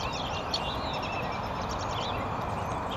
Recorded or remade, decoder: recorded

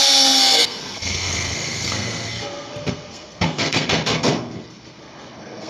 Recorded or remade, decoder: remade, codec, SNAC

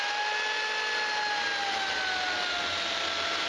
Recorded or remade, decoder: recorded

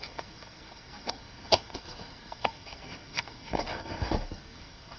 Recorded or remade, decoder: remade, codec, SNAC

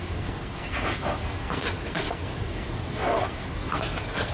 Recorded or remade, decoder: remade, codec, SNAC